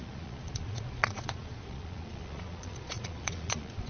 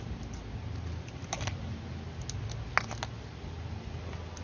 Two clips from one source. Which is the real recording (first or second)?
second